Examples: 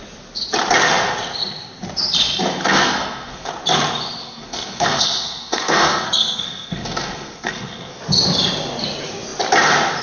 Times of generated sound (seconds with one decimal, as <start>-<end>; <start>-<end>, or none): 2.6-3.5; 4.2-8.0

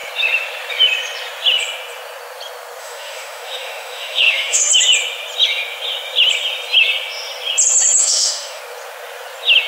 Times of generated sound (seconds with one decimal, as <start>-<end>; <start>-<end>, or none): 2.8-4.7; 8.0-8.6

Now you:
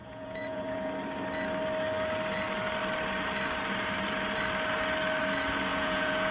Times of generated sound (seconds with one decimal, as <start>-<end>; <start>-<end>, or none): 0.0-0.9; 5.7-6.3

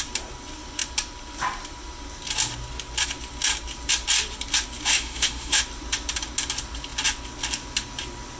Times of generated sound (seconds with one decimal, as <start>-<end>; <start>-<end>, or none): 4.9-5.6

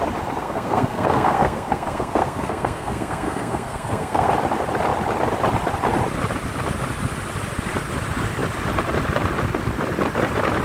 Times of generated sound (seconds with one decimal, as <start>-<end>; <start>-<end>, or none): 0.4-4.3

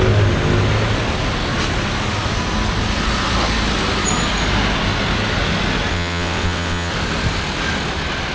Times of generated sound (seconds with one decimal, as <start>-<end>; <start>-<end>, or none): 5.9-6.9

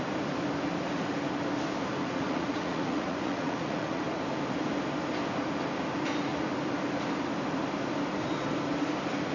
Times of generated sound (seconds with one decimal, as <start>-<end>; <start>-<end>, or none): 2.0-4.0

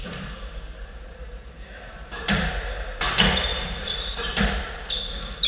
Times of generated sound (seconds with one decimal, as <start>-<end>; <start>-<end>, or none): 0.0-3.0; 3.5-4.5